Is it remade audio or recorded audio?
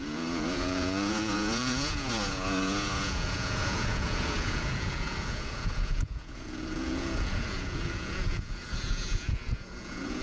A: remade